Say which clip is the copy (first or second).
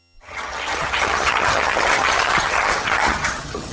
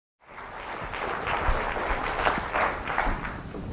first